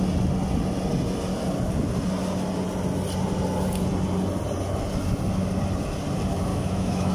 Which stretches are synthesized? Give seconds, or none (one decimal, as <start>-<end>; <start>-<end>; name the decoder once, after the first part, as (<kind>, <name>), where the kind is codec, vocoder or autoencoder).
6.5-7.1 (autoencoder, DAC-VAE)